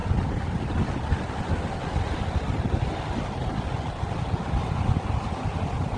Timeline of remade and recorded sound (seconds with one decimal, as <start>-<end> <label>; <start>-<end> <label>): 0.0-6.0 recorded